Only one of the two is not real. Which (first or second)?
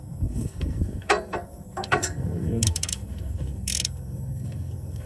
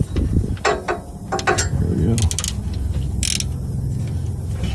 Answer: first